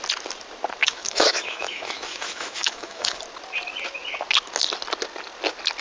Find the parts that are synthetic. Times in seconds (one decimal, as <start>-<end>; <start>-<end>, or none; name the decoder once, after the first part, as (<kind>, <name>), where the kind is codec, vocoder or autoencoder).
0.8-3.2 (autoencoder, DAC-VAE)